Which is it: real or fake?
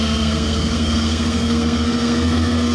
fake